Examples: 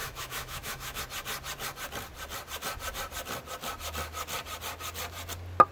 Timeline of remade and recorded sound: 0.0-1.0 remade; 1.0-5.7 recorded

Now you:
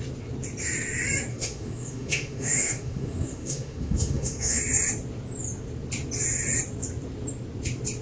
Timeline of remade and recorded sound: 0.0-1.3 recorded; 1.3-4.6 remade; 4.6-8.0 recorded